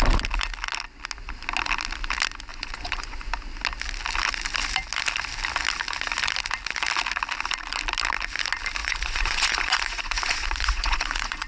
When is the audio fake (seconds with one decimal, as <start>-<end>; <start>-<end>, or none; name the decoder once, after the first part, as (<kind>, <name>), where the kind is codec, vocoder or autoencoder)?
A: 2.5-3.3 (vocoder, Vocos); 8.8-11.5